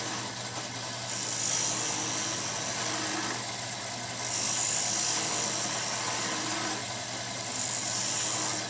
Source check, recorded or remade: recorded